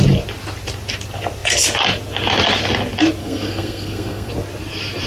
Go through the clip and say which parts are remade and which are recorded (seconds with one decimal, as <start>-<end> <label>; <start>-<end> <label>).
0.0-3.2 recorded; 3.2-4.3 remade; 4.3-5.1 recorded

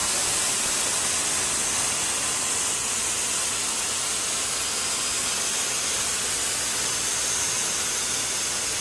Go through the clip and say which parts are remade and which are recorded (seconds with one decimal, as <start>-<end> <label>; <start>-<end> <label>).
0.0-0.8 remade; 0.8-8.8 recorded

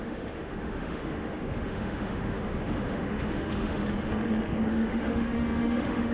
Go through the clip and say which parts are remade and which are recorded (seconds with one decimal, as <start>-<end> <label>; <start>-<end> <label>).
0.0-3.8 remade; 3.8-4.7 recorded; 4.7-6.1 remade

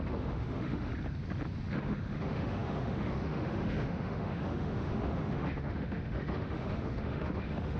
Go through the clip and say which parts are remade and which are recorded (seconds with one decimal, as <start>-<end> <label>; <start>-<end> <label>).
0.0-0.9 remade; 0.9-1.7 recorded; 1.7-7.8 remade

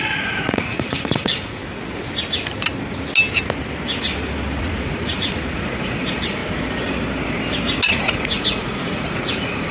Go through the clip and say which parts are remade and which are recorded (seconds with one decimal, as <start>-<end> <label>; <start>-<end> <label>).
0.0-1.6 remade; 1.6-4.6 recorded; 4.6-6.4 remade; 6.4-7.9 recorded; 7.9-9.7 remade

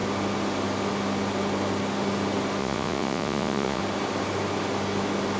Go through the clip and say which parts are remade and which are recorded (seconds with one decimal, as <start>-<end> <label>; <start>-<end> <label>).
0.0-2.6 recorded; 2.6-3.8 remade; 3.8-5.4 recorded